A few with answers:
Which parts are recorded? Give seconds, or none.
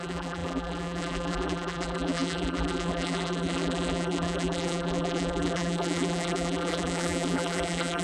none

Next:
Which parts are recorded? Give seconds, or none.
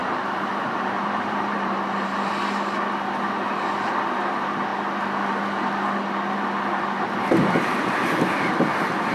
2.3-9.1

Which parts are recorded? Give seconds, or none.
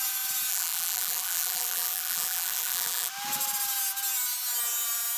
0.0-0.5; 3.1-5.2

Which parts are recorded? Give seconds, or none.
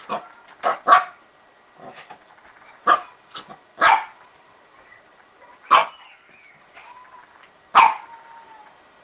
0.0-3.7; 5.0-9.0